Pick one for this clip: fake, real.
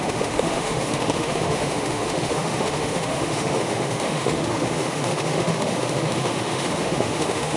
fake